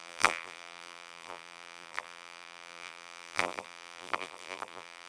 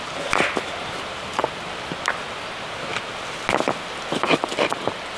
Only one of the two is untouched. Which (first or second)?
second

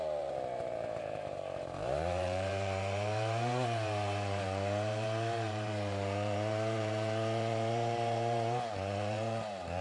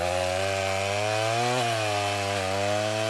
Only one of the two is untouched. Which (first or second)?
second